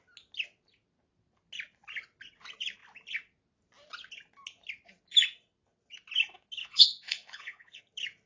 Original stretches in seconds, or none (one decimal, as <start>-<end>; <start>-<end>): 0.0-6.6; 7.8-8.3